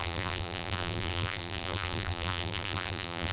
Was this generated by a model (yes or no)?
yes